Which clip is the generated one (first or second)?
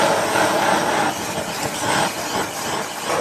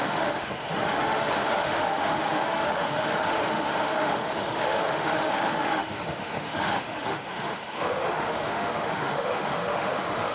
second